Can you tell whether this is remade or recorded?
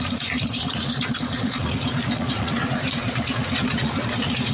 remade